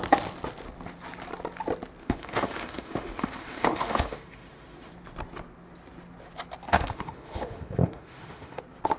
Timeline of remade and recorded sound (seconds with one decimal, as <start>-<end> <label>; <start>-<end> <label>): 0.0-2.0 recorded; 2.0-4.9 remade; 4.9-6.7 recorded; 6.7-8.6 remade; 8.6-9.0 recorded